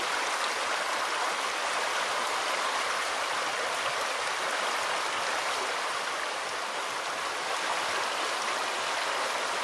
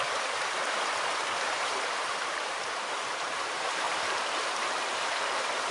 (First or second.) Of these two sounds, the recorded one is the first